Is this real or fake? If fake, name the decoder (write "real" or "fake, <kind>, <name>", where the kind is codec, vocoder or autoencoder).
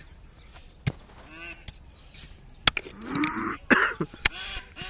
real